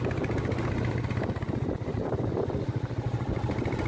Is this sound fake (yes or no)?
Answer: no